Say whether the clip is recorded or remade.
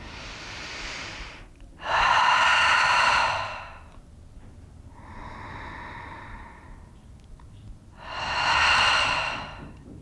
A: recorded